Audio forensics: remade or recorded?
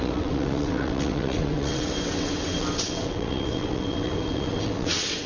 remade